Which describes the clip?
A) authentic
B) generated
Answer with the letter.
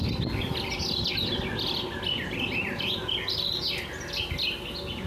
A